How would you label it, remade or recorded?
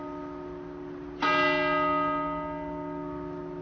recorded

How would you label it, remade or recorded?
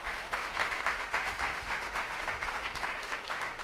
remade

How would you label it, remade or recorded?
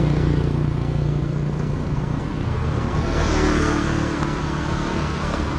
remade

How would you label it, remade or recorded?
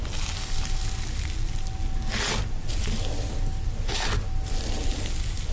recorded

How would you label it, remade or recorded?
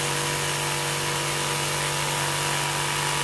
recorded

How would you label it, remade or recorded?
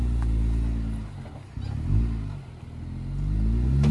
recorded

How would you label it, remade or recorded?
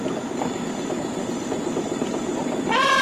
recorded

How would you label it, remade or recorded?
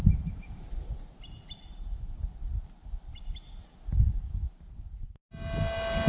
recorded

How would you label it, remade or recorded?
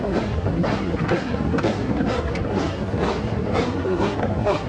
remade